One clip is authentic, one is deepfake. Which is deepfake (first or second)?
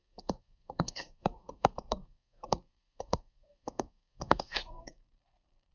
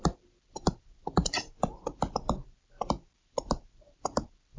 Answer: first